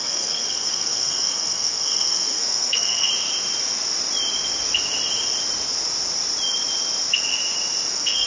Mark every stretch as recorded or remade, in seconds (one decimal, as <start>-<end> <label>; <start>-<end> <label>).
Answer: 0.0-3.1 remade; 3.1-7.9 recorded; 7.9-8.3 remade